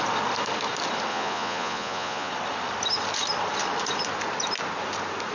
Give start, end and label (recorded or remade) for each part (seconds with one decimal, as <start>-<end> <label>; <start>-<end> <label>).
0.0-1.1 recorded; 1.1-2.3 remade; 2.3-5.3 recorded